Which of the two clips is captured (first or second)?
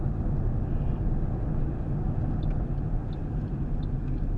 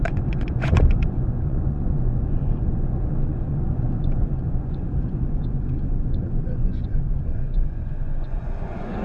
first